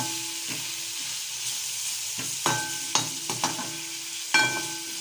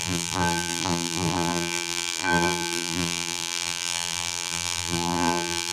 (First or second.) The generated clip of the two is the second